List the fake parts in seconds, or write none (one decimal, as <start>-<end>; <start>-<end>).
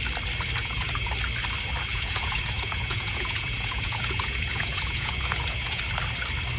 0.6-1.1; 1.9-5.8